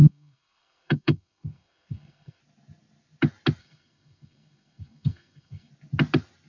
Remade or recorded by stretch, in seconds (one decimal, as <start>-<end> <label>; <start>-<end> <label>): 0.0-2.4 remade; 2.4-3.6 recorded; 3.6-5.7 remade; 5.7-6.5 recorded